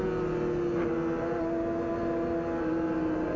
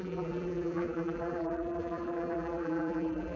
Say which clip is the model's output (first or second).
second